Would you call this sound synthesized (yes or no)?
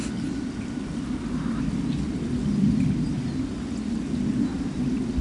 no